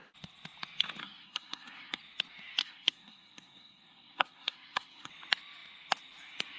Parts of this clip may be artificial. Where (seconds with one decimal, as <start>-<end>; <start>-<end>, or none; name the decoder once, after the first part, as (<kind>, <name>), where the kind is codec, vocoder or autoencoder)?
1.0-2.0 (codec, SNAC); 2.6-5.1